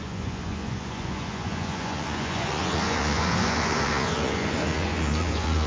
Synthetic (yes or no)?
yes